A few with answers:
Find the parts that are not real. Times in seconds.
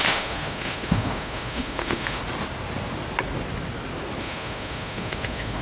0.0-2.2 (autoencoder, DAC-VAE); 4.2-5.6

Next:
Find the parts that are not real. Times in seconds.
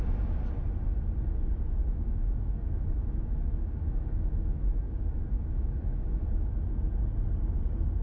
1.8-6.5 (autoencoder, DAC-VAE)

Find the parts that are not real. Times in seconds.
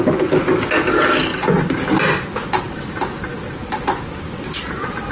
none